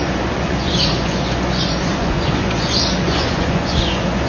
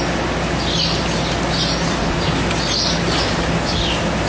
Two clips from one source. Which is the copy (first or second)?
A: first